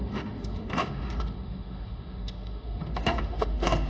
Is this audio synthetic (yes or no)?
yes